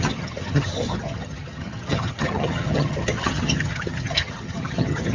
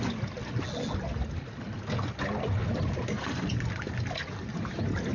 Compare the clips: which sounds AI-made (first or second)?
first